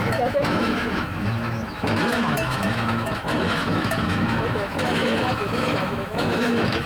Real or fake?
fake